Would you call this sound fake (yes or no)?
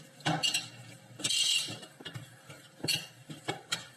yes